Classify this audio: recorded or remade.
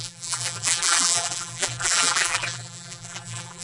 remade